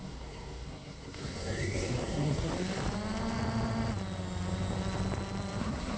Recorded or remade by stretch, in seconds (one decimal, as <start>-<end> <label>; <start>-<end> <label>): 0.0-2.5 remade; 2.5-5.6 recorded; 5.6-6.0 remade